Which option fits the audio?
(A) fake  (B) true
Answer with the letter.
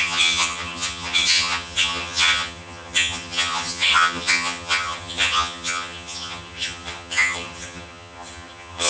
A